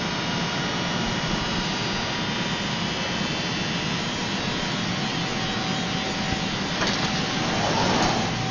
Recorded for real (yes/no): yes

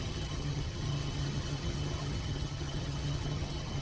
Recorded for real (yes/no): no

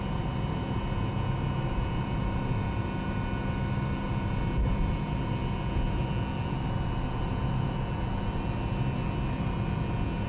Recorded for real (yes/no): yes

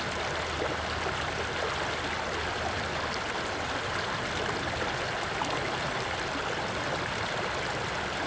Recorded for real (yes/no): yes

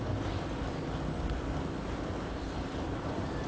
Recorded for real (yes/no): yes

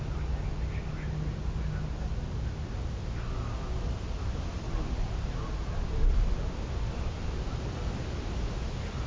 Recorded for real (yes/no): yes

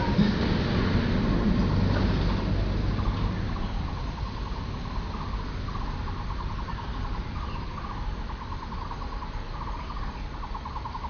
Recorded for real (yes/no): yes